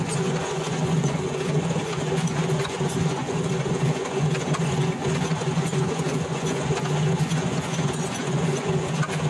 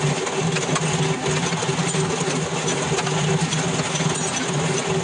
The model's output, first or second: first